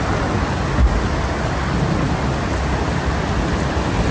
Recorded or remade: recorded